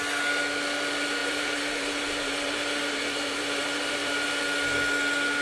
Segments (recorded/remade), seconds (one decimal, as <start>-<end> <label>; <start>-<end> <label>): 0.0-1.2 recorded; 1.2-4.4 remade; 4.4-5.4 recorded